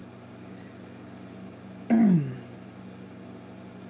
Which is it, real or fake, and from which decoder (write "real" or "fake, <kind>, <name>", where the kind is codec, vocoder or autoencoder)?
real